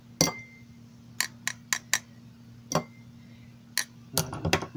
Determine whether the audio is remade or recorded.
recorded